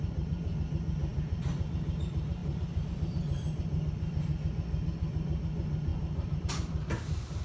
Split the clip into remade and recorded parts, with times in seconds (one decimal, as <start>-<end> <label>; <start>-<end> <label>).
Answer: 0.0-7.4 recorded